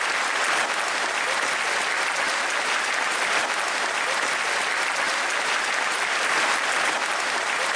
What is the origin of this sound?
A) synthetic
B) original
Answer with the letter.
B